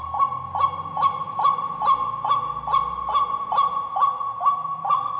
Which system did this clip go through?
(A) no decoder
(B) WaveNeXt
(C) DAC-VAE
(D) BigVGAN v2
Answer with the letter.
A